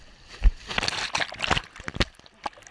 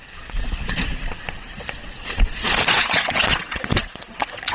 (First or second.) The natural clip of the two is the first